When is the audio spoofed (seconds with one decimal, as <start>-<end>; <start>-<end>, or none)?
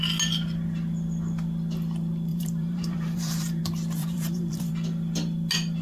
2.3-3.6; 4.0-4.7